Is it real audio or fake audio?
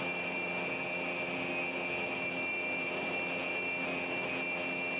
real